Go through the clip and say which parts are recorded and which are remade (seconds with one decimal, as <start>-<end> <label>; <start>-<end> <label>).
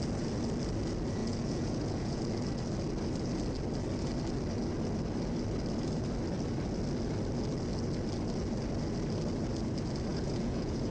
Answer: 0.0-1.2 recorded; 1.2-2.2 remade; 2.2-10.1 recorded; 10.1-10.9 remade